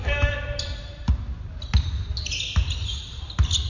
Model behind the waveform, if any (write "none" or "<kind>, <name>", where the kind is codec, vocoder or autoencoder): none